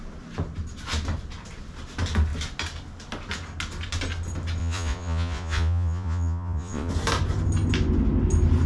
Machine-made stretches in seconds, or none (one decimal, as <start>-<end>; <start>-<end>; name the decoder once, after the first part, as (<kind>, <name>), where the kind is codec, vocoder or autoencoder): 4.6-6.9 (vocoder, Vocos)